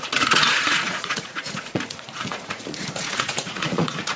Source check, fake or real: fake